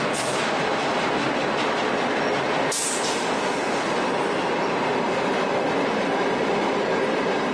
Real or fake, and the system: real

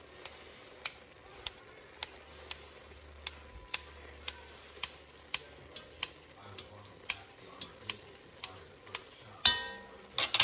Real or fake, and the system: real